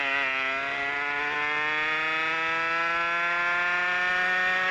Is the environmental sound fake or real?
real